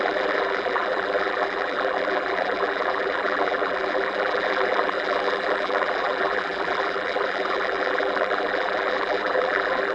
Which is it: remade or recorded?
remade